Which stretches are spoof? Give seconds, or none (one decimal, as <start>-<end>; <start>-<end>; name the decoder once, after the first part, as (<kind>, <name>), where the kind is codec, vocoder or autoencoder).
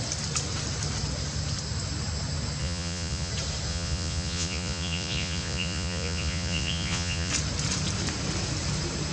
2.6-3.3 (vocoder, Vocos); 3.7-7.3